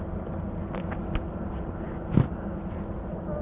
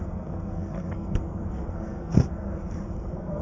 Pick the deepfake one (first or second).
second